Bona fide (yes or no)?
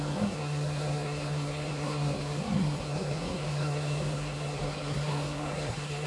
no